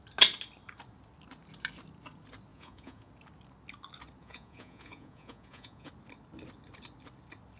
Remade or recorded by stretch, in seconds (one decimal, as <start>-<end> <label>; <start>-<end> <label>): 0.0-2.5 recorded; 2.5-3.1 remade; 3.1-4.2 recorded; 4.2-5.9 remade; 5.9-7.6 recorded